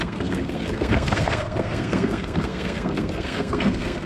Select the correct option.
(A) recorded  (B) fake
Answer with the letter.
B